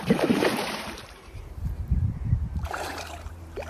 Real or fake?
fake